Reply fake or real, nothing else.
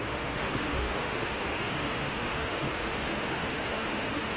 fake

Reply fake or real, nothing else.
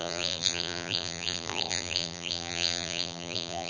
fake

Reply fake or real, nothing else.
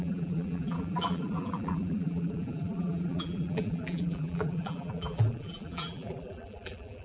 fake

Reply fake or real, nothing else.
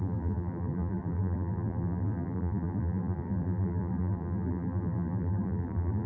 fake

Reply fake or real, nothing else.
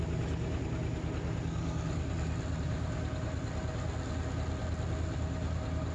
real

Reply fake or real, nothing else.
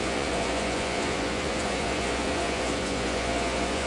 fake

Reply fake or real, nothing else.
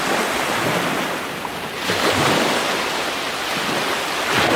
real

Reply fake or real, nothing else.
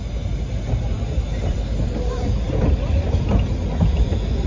real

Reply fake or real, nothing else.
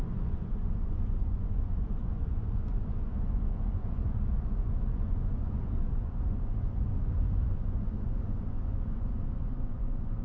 fake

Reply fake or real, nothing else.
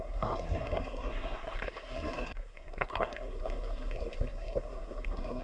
fake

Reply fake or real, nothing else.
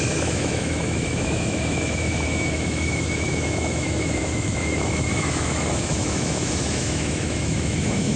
fake